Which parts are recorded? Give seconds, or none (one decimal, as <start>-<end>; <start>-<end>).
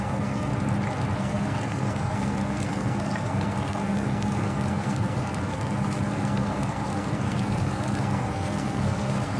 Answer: 0.5-1.2